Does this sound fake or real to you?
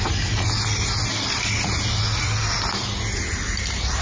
real